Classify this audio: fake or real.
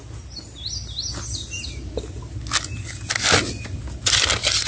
real